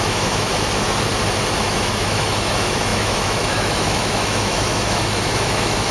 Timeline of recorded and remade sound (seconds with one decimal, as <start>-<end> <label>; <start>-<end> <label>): 0.0-0.5 remade; 0.5-1.6 recorded; 1.6-5.9 remade